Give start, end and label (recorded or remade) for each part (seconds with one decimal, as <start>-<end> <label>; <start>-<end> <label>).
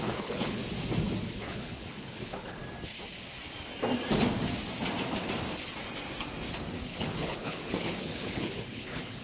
0.0-0.6 remade; 0.6-1.3 recorded; 1.3-2.6 remade; 2.6-6.8 recorded; 6.8-9.2 remade